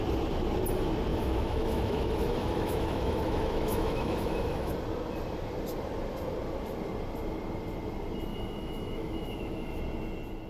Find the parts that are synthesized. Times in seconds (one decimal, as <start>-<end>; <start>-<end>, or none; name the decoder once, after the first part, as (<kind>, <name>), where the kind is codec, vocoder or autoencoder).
1.1-4.7 (autoencoder, DAC-VAE); 8.3-9.8